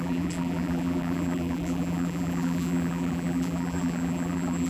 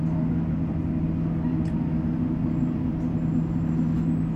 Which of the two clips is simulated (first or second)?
first